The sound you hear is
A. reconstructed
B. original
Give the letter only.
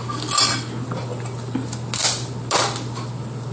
B